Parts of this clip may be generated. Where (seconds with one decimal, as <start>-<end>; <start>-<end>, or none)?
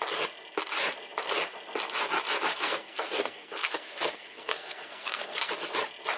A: 2.5-5.5